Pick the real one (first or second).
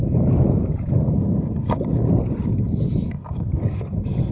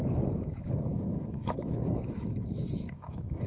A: first